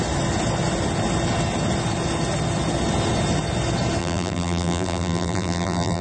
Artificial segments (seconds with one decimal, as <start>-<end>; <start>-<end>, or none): 4.0-6.0